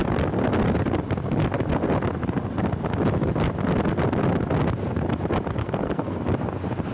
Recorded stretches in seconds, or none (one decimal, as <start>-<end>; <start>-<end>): 0.0-5.6; 6.2-6.9